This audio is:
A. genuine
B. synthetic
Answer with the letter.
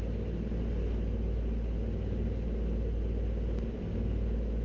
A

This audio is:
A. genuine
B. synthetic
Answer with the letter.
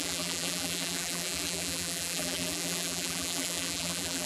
B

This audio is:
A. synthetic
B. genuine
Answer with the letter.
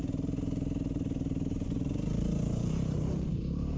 A